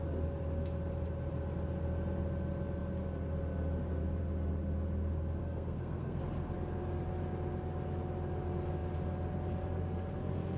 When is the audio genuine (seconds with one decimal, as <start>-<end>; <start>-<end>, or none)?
0.0-5.4; 6.2-10.6